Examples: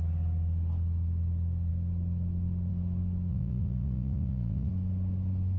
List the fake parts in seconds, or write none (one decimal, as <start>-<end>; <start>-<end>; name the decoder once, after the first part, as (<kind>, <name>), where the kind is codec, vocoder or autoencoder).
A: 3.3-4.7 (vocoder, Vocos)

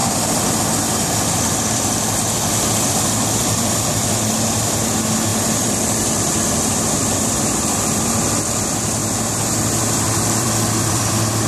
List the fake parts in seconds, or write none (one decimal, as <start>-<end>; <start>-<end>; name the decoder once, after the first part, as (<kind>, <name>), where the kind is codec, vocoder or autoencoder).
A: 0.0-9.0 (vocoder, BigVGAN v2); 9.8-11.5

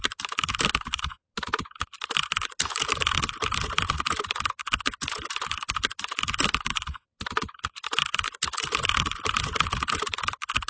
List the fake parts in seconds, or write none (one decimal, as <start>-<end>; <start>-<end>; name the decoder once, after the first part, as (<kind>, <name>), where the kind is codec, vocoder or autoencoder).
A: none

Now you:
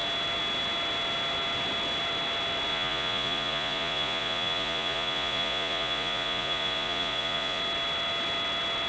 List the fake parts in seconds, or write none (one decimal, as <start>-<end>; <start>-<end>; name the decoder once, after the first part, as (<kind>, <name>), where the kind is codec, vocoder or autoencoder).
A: 2.7-7.6 (vocoder, Vocos)